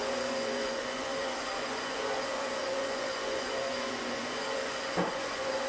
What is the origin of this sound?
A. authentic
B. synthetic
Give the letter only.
B